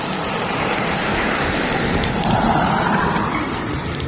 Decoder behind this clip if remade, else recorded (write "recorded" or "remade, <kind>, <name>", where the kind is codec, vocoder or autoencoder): remade, vocoder, BigVGAN v2